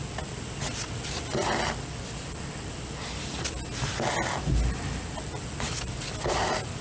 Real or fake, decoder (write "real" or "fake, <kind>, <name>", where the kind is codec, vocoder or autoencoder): real